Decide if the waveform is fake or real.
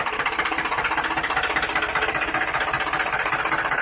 fake